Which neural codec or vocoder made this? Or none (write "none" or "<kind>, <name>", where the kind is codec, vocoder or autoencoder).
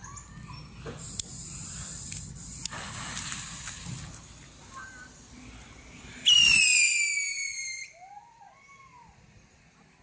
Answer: none